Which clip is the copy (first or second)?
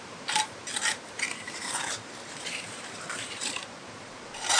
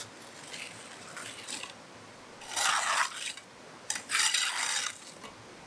first